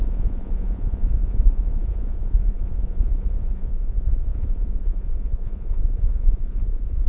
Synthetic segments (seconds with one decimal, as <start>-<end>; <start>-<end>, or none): 0.0-7.1